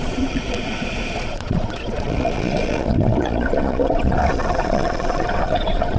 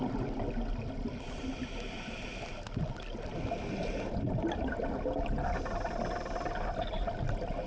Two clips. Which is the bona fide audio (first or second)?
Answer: second